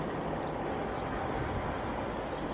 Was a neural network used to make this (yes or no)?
no